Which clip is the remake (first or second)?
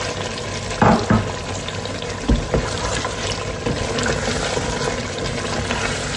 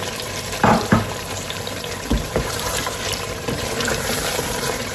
second